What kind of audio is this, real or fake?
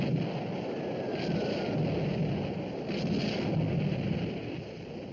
real